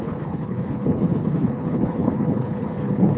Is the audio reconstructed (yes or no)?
yes